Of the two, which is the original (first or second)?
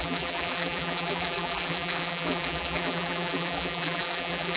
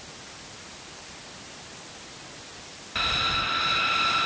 second